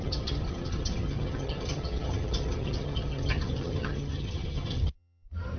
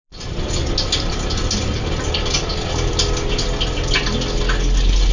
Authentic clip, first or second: second